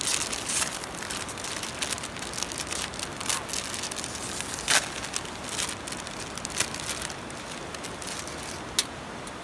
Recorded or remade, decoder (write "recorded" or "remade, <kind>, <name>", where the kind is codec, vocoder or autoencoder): recorded